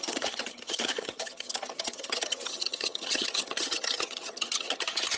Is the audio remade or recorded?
remade